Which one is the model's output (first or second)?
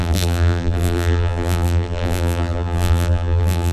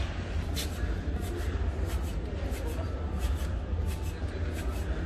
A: first